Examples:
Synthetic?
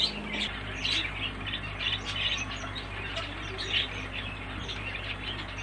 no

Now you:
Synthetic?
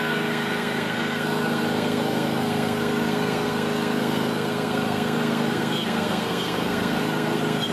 yes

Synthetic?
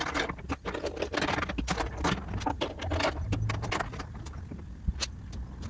no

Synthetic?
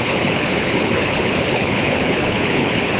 yes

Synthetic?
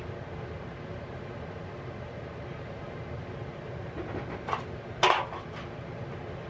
no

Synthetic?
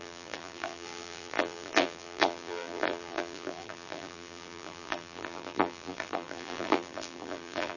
yes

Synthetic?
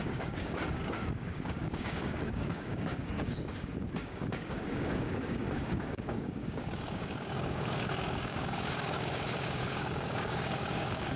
yes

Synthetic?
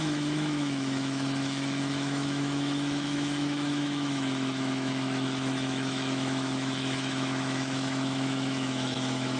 yes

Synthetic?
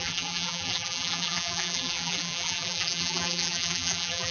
yes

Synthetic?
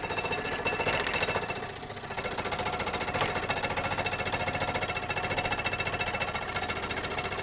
no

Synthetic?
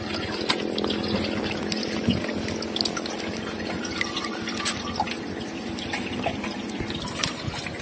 no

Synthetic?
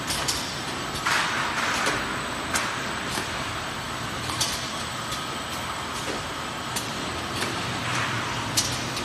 no